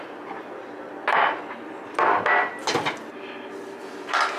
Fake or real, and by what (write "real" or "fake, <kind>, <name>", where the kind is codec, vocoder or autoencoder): real